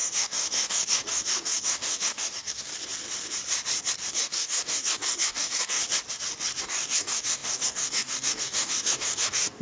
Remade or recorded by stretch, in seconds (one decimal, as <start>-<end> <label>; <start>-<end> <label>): 0.0-2.7 remade; 2.7-4.1 recorded; 4.1-5.8 remade; 5.8-6.6 recorded; 6.6-9.6 remade

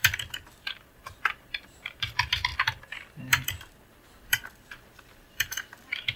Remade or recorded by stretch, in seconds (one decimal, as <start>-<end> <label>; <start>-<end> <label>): 0.0-0.6 recorded; 0.6-2.5 remade; 2.5-3.8 recorded; 3.8-6.2 remade

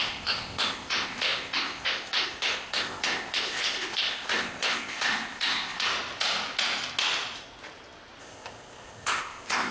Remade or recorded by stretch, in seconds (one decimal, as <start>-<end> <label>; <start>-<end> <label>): 0.0-5.9 remade; 5.9-8.2 recorded; 8.2-9.7 remade

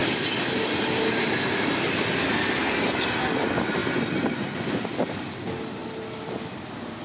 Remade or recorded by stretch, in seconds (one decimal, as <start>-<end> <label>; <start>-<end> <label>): 0.0-0.8 remade; 0.8-3.8 recorded; 3.8-5.1 remade; 5.1-7.0 recorded

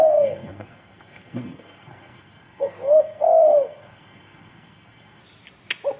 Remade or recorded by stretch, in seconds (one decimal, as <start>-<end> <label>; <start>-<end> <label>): 0.0-5.2 remade; 5.2-6.0 recorded

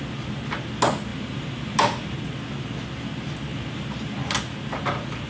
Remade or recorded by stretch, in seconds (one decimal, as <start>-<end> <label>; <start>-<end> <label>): 0.0-1.1 recorded; 1.1-2.2 remade; 2.2-3.5 recorded; 3.5-4.2 remade; 4.2-5.3 recorded

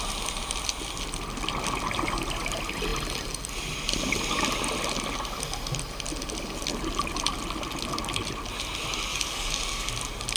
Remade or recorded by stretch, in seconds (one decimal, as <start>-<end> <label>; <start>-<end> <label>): 0.0-9.1 recorded; 9.1-9.9 remade; 9.9-10.4 recorded

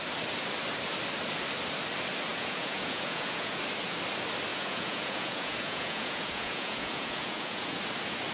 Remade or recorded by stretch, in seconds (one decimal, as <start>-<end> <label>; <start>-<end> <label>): 0.0-2.3 recorded; 2.3-3.6 remade; 3.6-4.5 recorded; 4.5-7.8 remade; 7.8-8.3 recorded